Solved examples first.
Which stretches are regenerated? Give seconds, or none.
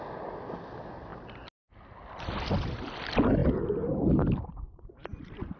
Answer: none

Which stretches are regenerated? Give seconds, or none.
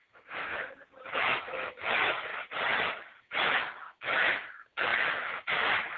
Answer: 0.0-0.5 (autoencoder, DAC-VAE); 1.2-2.3; 3.2-6.0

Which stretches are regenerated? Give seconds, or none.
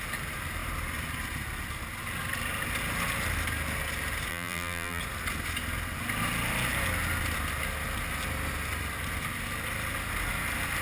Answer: 4.3-5.0 (vocoder, BigVGAN v2)